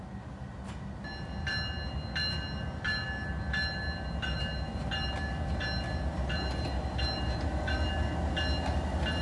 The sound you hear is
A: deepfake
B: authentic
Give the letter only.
B